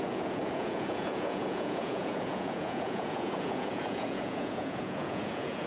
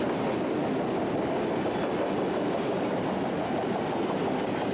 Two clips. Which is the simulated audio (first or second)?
first